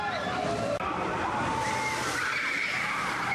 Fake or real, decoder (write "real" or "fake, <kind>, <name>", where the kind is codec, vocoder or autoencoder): real